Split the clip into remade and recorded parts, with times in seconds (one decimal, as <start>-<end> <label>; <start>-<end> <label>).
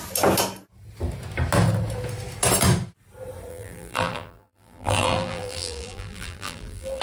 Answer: 0.0-3.5 recorded; 3.5-7.0 remade